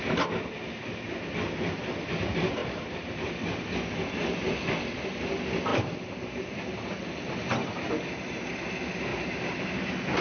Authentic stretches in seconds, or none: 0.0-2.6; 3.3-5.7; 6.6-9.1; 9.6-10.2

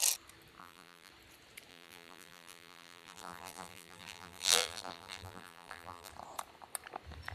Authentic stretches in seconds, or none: 0.0-0.6; 1.1-1.7; 6.1-7.3

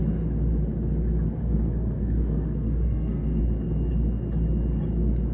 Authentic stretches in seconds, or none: 0.0-1.4; 3.4-5.3

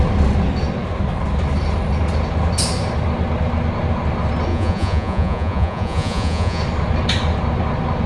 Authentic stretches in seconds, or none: 0.0-4.5; 6.6-8.1

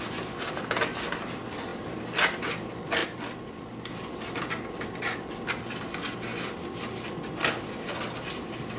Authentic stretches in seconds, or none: 0.0-8.8

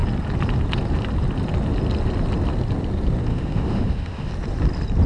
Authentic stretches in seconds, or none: 0.0-3.3; 4.3-5.1

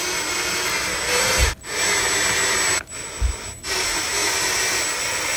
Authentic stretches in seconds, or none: 0.0-5.4